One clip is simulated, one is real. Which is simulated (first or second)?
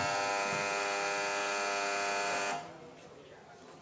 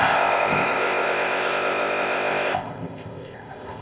second